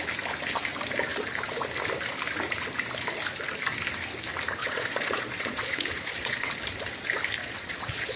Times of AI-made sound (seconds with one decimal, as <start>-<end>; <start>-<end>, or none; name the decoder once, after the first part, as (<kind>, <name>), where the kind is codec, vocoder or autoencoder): 4.6-6.5 (vocoder, Vocos); 7.4-8.2